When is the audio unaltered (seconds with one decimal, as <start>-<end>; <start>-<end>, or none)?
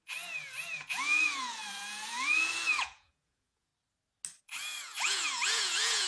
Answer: 3.7-4.4